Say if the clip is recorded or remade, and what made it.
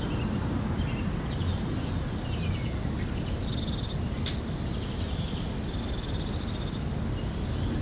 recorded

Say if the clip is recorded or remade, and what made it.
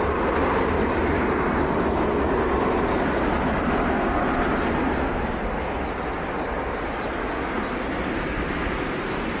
recorded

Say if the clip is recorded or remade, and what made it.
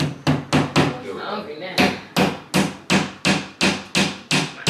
recorded